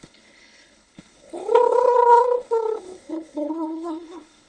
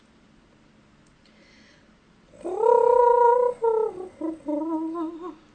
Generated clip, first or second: first